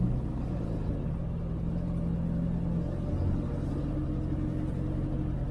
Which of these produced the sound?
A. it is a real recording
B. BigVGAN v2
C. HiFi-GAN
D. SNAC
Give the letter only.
A